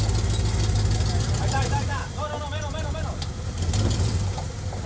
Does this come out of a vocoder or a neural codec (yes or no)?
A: no